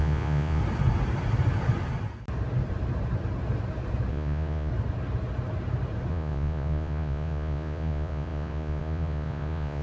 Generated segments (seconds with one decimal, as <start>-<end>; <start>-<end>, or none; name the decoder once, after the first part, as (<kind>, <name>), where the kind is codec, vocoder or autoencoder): 0.0-0.6 (vocoder, Vocos); 4.1-4.7; 6.1-9.8